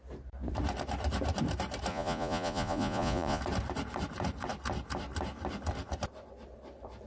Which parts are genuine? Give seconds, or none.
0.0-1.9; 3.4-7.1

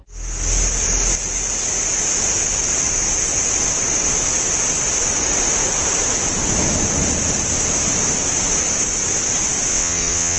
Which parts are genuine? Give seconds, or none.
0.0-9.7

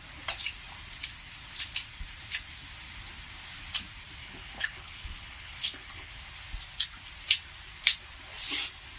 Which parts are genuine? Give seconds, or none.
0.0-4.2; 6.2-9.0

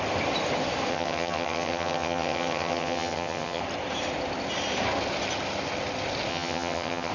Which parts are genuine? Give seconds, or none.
0.0-0.9; 3.6-6.3

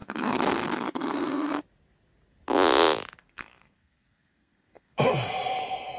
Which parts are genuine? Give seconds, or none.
1.6-3.2; 5.1-6.0

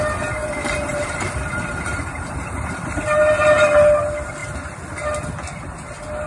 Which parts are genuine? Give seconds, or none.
0.0-0.4; 3.4-6.3

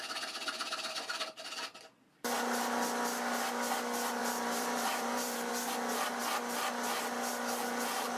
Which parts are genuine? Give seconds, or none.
0.0-4.2; 5.5-8.2